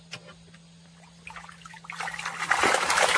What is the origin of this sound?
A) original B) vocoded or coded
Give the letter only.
A